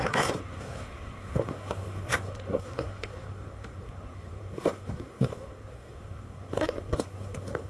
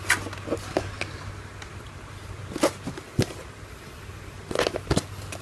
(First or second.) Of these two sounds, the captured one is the second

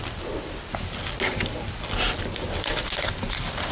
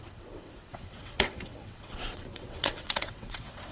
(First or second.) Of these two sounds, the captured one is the first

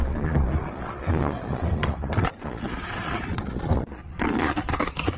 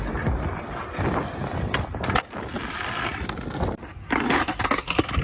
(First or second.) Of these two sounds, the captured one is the second